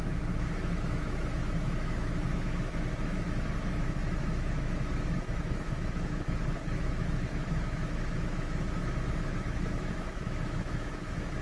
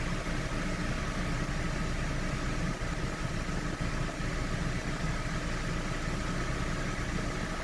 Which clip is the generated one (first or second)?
first